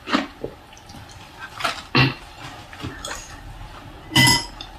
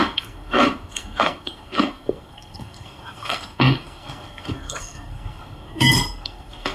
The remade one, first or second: second